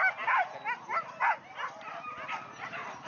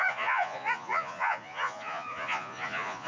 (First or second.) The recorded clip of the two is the first